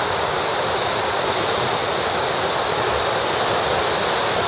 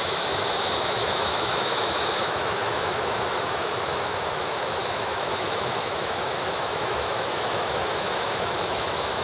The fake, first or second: second